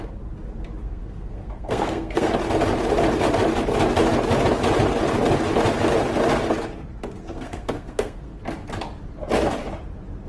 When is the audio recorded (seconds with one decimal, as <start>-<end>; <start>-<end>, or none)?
0.0-0.8; 2.3-7.2; 8.4-10.3